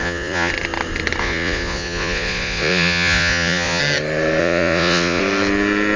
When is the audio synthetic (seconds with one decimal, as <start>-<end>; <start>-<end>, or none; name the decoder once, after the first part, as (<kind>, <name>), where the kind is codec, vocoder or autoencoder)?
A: 0.0-0.5 (vocoder, Vocos); 1.2-3.8; 4.4-5.2